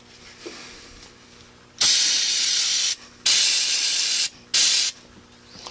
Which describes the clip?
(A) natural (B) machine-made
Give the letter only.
A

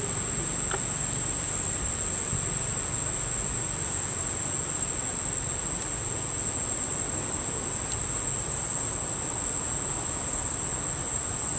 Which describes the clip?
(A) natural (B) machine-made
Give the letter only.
A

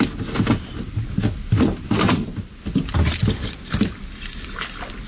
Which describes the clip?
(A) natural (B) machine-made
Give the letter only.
A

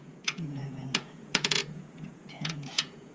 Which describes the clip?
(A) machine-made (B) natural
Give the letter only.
A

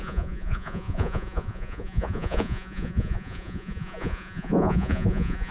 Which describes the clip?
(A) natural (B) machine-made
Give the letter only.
B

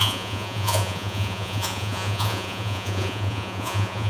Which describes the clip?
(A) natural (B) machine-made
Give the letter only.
B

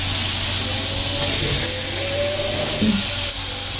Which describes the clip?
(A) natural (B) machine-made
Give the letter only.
A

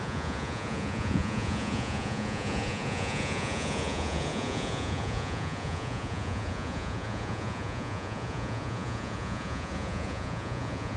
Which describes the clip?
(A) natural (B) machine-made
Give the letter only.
B